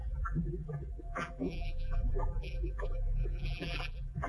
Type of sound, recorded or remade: remade